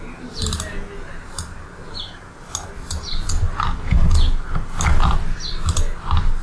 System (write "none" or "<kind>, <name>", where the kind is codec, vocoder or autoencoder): none